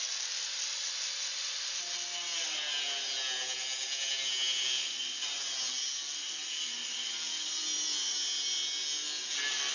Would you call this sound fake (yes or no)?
no